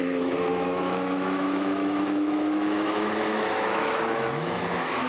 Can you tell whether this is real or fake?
fake